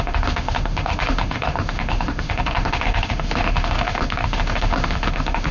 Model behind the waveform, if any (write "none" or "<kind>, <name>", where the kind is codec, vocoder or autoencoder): autoencoder, DAC-VAE